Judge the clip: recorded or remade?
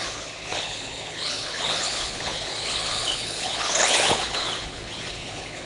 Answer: remade